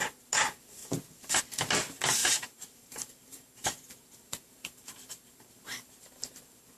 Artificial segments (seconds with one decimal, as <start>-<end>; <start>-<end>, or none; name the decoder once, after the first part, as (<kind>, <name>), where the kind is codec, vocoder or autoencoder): 2.2-6.3 (vocoder, BigVGAN v2)